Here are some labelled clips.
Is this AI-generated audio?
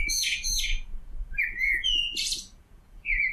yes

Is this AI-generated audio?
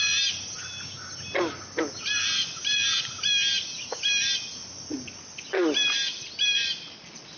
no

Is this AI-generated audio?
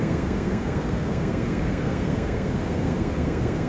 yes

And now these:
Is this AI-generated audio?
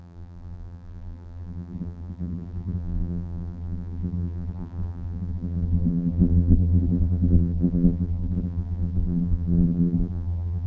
yes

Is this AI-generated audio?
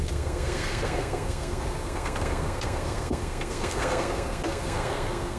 yes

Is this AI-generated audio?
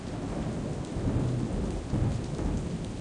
no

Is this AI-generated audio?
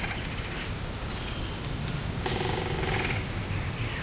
no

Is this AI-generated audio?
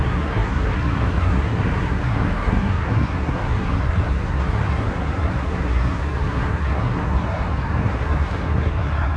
yes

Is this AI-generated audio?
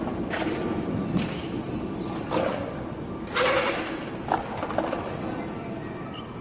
no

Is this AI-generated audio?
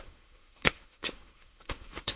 yes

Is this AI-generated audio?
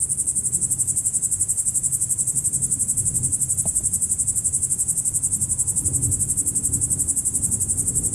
no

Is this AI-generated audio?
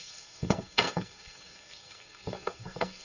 yes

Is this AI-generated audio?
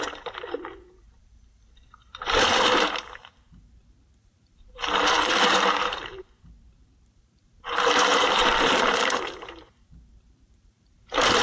yes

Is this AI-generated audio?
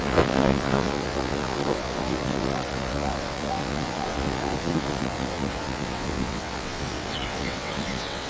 yes